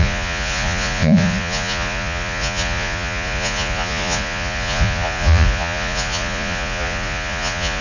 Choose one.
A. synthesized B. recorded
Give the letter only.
A